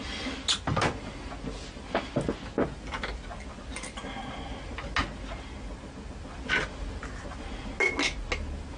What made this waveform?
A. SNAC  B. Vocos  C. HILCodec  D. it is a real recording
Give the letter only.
D